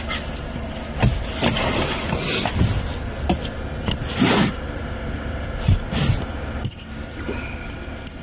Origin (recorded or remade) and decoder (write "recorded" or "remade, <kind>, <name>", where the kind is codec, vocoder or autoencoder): recorded